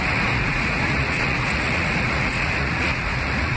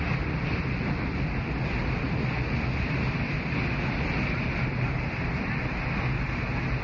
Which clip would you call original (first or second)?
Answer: second